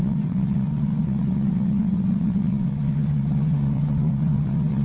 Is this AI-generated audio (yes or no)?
yes